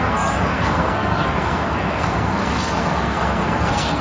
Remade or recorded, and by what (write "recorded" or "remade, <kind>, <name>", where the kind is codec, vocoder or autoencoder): remade, codec, SNAC